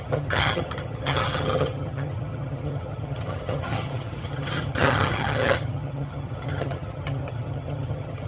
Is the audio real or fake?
fake